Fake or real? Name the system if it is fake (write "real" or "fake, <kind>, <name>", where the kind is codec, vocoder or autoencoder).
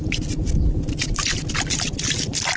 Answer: real